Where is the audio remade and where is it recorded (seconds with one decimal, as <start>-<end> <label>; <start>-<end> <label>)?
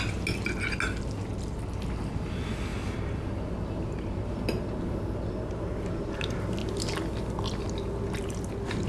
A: 0.0-8.9 recorded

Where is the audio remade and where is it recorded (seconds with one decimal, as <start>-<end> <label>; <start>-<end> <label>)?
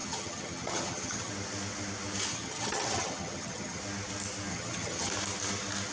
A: 0.0-1.3 remade; 1.3-2.3 recorded; 2.3-3.8 remade; 3.8-4.5 recorded; 4.5-5.1 remade; 5.1-5.9 recorded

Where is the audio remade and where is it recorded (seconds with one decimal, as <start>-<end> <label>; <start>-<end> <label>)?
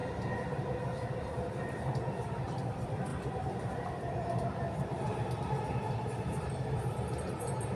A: 0.0-7.8 recorded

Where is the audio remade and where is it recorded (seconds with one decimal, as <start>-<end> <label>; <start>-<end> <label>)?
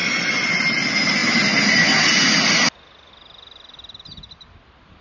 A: 0.0-5.0 recorded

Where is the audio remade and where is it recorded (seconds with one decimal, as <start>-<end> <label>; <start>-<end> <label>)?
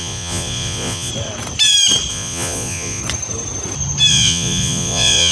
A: 0.0-1.1 remade; 1.1-2.1 recorded; 2.1-3.0 remade; 3.0-4.1 recorded; 4.1-5.3 remade